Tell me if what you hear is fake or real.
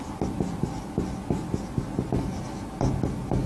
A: real